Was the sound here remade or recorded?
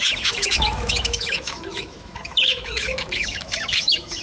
remade